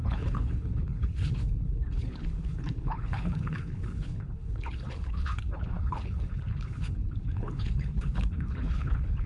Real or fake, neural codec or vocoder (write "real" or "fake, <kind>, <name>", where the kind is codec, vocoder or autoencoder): fake, codec, HILCodec